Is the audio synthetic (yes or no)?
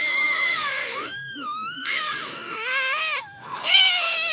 yes